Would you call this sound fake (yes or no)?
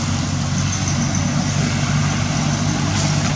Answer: no